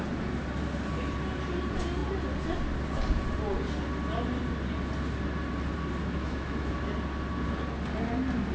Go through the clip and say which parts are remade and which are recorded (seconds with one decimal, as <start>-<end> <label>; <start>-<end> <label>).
0.0-6.0 recorded; 6.0-6.7 remade; 6.7-8.5 recorded

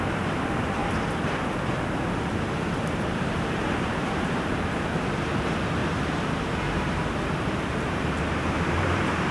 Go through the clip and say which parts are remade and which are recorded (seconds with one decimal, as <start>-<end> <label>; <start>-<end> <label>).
0.0-0.8 remade; 0.8-2.9 recorded; 2.9-5.8 remade; 5.8-7.9 recorded; 7.9-9.3 remade

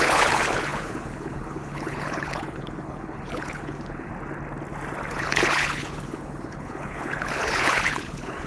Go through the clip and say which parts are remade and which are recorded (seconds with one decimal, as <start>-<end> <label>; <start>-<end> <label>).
0.0-4.1 remade; 4.1-5.1 recorded; 5.1-8.5 remade